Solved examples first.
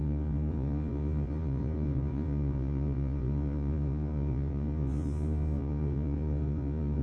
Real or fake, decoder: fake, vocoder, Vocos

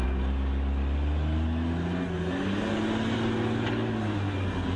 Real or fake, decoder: real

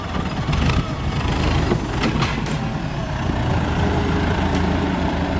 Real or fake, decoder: real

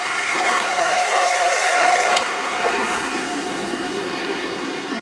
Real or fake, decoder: fake, codec, SNAC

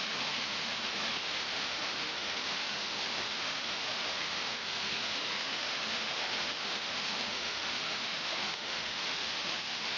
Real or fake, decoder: fake, autoencoder, DAC-VAE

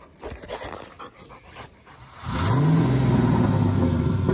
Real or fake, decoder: real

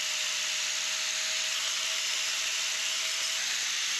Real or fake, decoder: real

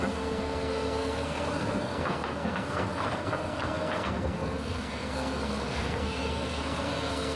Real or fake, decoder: fake, codec, SNAC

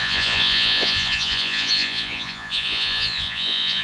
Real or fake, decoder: fake, vocoder, Vocos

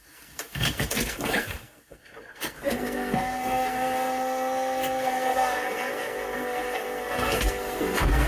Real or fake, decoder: fake, codec, SNAC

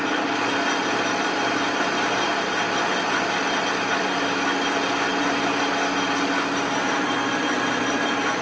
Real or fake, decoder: real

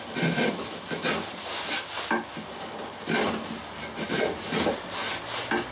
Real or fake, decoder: real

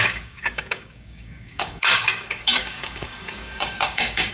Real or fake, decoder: fake, codec, DAC